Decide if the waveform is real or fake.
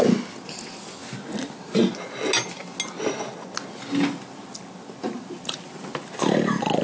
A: real